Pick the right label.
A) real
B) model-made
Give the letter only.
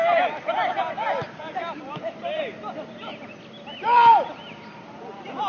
B